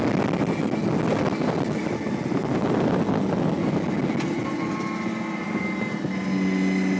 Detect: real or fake real